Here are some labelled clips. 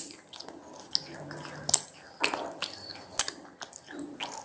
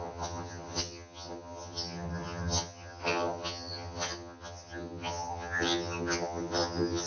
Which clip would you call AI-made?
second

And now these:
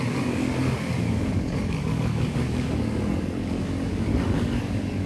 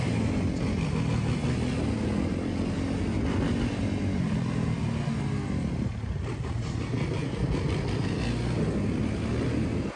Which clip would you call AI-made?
first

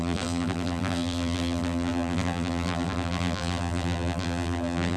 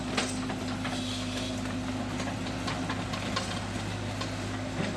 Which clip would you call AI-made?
first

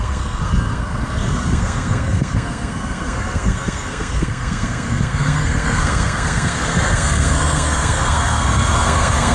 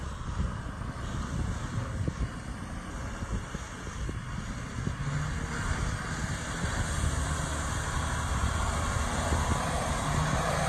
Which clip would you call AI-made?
first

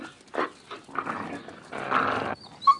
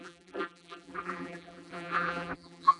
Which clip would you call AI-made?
second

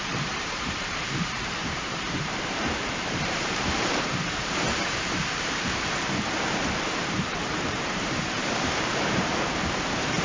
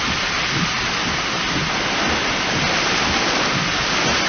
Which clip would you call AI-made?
first